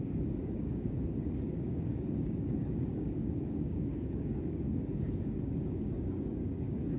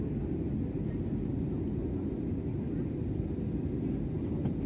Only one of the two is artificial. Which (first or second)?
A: first